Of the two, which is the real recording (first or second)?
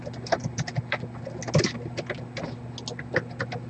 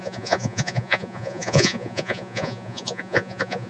first